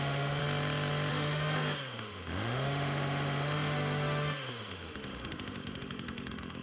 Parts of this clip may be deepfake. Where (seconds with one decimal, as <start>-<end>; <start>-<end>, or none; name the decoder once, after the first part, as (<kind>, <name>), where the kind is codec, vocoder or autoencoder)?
0.0-0.4 (autoencoder, DAC-VAE); 1.1-6.6